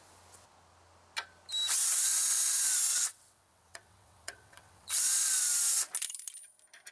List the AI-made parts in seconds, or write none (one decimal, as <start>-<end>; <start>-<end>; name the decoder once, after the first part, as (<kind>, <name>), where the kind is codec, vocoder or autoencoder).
2.9-5.0 (vocoder, WaveNeXt)

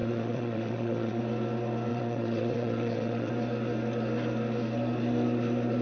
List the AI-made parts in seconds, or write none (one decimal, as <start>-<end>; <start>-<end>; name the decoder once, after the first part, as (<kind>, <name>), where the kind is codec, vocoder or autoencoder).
0.0-1.2 (vocoder, WaveNeXt); 1.9-3.3

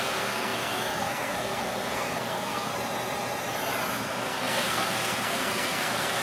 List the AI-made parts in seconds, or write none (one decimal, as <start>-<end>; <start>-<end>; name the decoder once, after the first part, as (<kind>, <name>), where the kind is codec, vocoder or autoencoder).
0.0-2.7 (codec, SNAC); 3.9-6.2

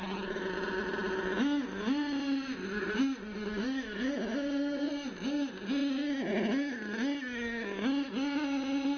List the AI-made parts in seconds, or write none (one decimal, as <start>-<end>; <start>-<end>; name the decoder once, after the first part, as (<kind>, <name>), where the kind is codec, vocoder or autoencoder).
none

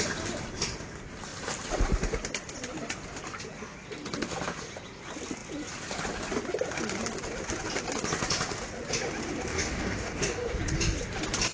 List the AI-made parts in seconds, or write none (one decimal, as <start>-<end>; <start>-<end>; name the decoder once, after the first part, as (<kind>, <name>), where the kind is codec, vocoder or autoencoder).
9.5-10.6 (codec, DAC)

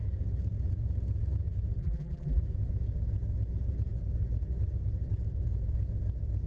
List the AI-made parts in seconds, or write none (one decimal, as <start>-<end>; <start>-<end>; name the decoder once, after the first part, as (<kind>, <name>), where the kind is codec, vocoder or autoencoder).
1.8-2.4 (vocoder, BigVGAN v2)